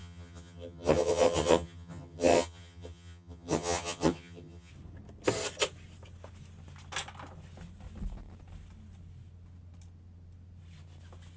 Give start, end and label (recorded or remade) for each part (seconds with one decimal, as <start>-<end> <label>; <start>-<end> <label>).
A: 0.0-4.7 remade; 4.7-11.4 recorded